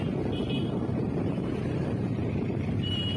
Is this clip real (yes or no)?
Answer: no